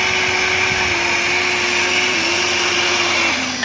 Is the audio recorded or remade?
recorded